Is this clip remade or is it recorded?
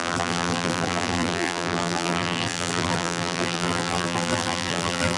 remade